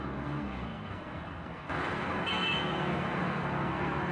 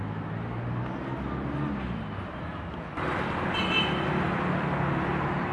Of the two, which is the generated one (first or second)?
first